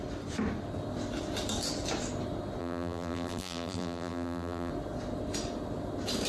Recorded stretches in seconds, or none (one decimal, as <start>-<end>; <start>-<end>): 0.0-2.6; 4.7-6.3